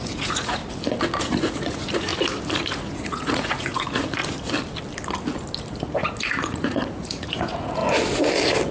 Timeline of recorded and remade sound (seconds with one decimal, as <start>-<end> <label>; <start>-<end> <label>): 0.0-0.6 remade; 0.6-1.2 recorded; 1.2-2.1 remade; 2.1-2.8 recorded; 2.8-4.2 remade; 4.2-6.2 recorded; 6.2-7.8 remade; 7.8-8.7 recorded